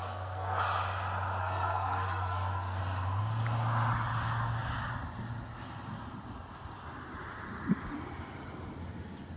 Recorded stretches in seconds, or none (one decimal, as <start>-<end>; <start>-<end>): 0.6-1.4; 2.8-9.4